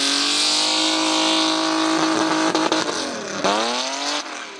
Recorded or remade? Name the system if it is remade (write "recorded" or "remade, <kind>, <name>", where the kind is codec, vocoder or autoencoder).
recorded